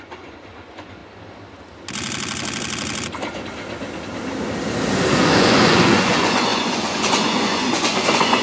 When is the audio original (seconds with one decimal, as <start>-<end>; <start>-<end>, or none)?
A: 1.0-5.1